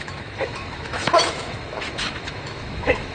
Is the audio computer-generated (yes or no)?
yes